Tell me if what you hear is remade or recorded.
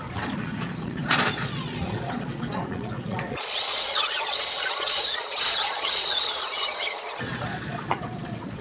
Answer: remade